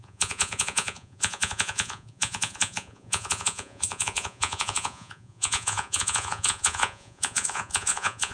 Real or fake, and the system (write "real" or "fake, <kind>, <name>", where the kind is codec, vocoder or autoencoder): fake, vocoder, Vocos